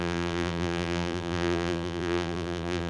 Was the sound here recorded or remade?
remade